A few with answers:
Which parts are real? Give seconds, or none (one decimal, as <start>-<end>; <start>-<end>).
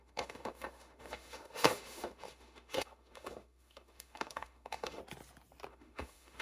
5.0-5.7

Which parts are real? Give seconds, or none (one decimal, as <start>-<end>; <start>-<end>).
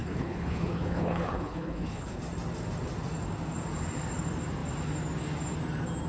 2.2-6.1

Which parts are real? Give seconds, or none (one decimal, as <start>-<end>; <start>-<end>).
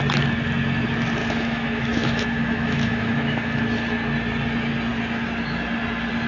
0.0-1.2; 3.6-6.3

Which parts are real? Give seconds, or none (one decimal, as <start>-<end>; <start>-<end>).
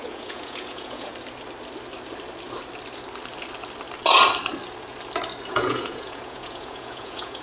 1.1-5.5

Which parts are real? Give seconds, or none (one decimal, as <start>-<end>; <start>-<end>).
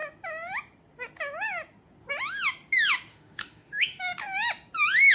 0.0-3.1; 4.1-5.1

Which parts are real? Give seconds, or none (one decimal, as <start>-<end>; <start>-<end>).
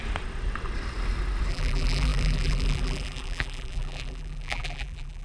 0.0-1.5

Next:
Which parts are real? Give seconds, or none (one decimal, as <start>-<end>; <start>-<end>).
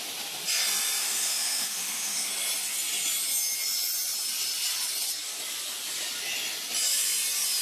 0.0-1.0; 2.3-7.6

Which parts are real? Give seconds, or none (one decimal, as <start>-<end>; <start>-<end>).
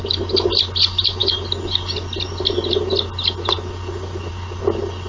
0.0-5.1